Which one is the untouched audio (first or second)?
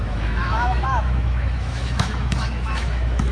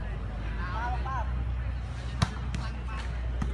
second